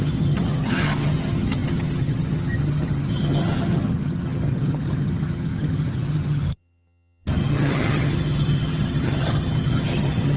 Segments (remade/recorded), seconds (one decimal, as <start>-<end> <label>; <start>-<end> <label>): 0.0-10.4 remade

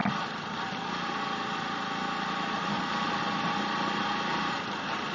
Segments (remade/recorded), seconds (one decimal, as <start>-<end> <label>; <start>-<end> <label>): 0.0-5.1 recorded

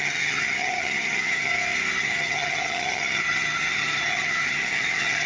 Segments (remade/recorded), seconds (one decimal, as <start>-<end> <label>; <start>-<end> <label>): 0.0-1.5 remade; 1.5-2.0 recorded; 2.0-5.3 remade

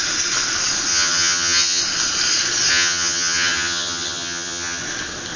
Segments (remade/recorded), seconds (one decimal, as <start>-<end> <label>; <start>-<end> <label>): 0.0-0.9 recorded; 0.9-1.8 remade; 1.8-2.7 recorded; 2.7-4.8 remade; 4.8-5.4 recorded

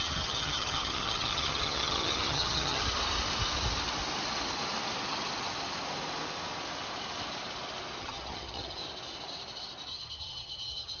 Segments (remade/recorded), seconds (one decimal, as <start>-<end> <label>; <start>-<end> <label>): 0.0-2.8 remade; 2.8-8.0 recorded; 8.0-8.8 remade; 8.8-9.9 recorded; 9.9-11.0 remade

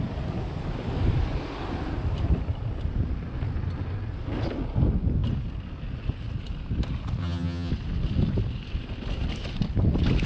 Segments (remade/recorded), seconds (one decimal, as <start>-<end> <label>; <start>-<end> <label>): 0.0-7.2 recorded; 7.2-7.7 remade; 7.7-10.3 recorded